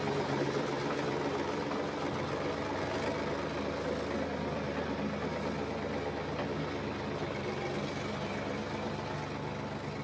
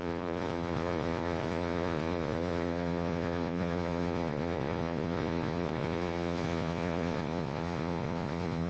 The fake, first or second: second